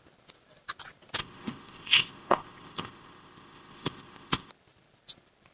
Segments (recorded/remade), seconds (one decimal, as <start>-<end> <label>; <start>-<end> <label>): 0.0-1.2 recorded; 1.2-4.5 remade; 4.5-5.5 recorded